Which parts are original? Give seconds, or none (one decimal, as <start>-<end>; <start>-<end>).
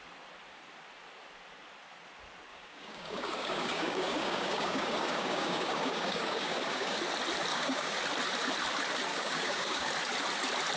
0.0-2.5; 7.0-7.5; 8.0-9.1; 9.9-10.8